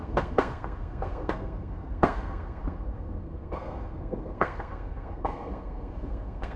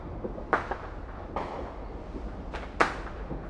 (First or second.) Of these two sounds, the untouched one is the second